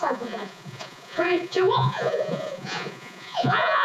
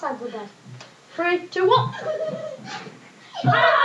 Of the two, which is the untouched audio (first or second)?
second